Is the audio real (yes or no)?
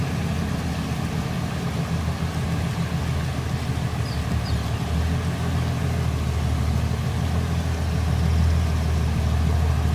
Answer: yes